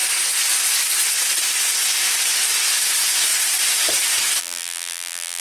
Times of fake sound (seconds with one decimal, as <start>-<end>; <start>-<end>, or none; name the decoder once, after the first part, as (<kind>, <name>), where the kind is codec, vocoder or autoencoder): 4.4-5.4 (vocoder, BigVGAN v2)